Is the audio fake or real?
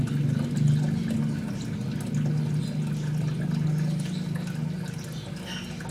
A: real